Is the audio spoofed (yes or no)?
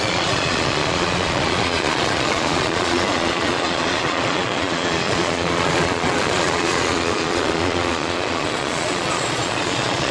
yes